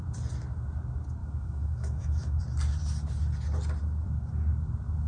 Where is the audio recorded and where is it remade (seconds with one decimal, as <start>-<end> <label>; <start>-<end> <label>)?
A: 0.0-1.2 recorded; 1.2-2.4 remade; 2.4-5.1 recorded